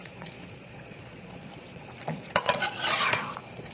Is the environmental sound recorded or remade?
remade